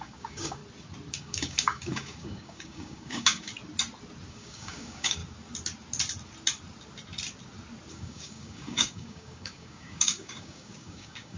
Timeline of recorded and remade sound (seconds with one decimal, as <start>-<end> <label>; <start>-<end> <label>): 0.0-0.6 remade; 0.6-1.1 recorded; 1.1-3.5 remade; 3.5-4.3 recorded; 4.3-5.2 remade; 5.2-7.9 recorded; 7.9-11.4 remade